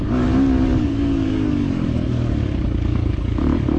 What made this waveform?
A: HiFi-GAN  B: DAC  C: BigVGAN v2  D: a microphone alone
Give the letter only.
B